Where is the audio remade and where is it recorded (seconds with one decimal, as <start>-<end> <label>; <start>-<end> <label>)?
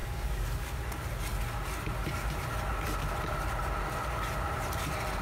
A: 0.0-0.8 remade; 0.8-5.2 recorded